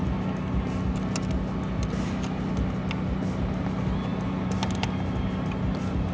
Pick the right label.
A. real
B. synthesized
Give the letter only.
A